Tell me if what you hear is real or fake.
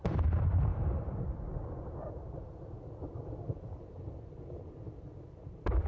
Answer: fake